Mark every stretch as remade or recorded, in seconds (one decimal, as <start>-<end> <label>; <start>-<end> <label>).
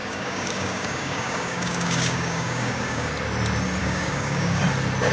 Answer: 0.0-3.1 remade; 3.1-3.8 recorded; 3.8-4.6 remade; 4.6-5.1 recorded